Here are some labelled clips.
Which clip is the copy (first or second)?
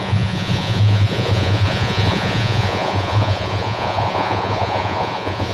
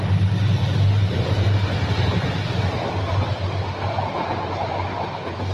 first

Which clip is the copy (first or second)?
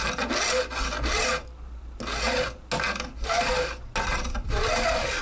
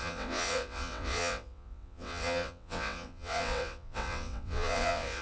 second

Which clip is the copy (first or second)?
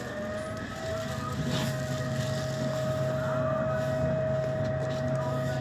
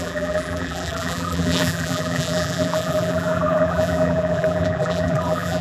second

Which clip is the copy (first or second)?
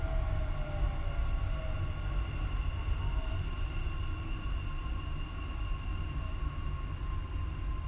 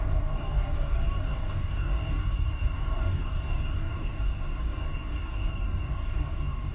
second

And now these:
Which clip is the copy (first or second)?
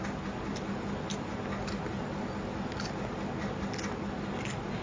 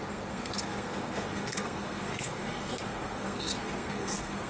second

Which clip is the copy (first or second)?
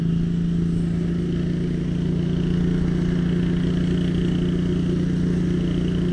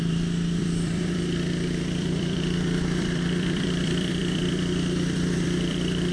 second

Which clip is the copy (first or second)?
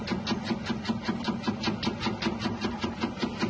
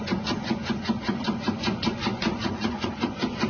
second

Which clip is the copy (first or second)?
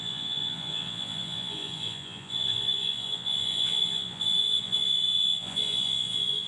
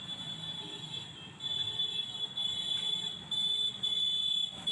first